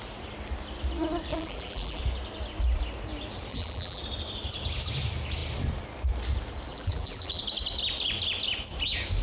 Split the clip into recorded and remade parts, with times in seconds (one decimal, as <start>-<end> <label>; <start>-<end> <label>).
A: 0.0-1.3 recorded; 1.3-2.0 remade; 2.0-3.5 recorded; 3.5-4.0 remade; 4.0-6.7 recorded; 6.7-7.4 remade; 7.4-9.2 recorded